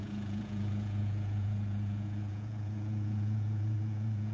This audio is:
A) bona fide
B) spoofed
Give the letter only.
B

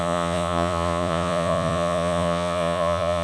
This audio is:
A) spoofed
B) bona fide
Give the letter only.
A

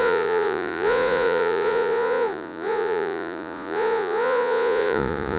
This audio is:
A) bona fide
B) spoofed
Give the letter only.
B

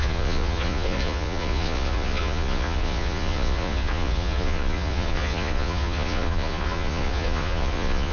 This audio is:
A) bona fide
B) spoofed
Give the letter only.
B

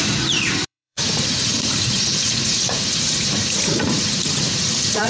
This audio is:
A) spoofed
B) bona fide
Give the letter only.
A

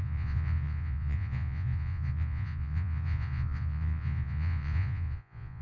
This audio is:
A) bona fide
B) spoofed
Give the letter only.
B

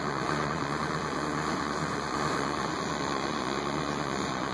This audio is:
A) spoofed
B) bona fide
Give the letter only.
A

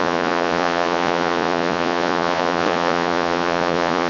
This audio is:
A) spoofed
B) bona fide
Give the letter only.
A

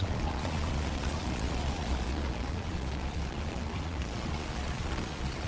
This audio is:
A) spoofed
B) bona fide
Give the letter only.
A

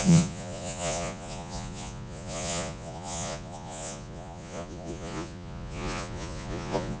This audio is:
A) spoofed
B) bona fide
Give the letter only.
A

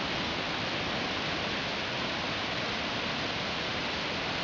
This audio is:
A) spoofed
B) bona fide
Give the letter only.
B